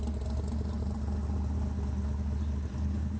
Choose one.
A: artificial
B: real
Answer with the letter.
B